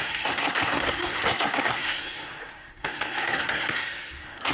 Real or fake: fake